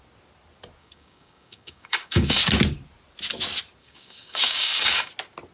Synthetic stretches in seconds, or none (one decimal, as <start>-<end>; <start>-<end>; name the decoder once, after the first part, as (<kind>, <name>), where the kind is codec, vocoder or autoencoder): 0.8-2.4 (codec, DAC); 3.8-5.1